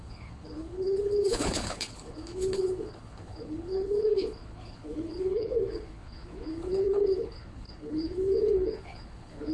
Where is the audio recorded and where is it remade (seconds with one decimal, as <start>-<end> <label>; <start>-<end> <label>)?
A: 0.0-9.5 remade